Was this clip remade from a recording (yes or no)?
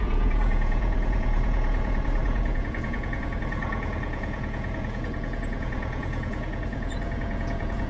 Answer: yes